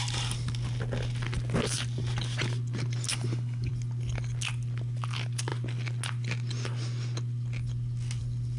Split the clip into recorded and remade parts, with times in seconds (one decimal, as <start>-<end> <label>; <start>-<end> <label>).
0.0-3.1 recorded; 3.1-3.7 remade; 3.7-8.6 recorded